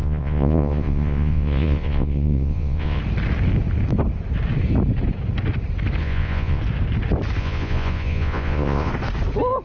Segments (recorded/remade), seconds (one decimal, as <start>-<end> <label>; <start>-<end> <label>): 0.0-3.0 remade; 3.0-6.0 recorded; 6.0-6.6 remade; 6.6-7.4 recorded; 7.4-8.9 remade; 8.9-9.6 recorded